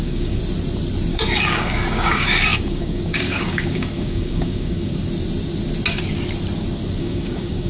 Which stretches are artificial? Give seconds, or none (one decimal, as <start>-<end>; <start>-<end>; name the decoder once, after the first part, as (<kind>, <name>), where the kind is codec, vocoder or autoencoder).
0.0-0.4 (codec, DAC); 1.1-4.9; 7.0-7.7